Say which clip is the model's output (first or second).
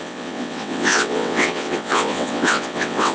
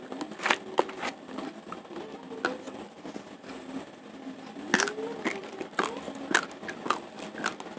first